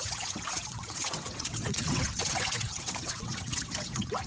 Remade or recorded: remade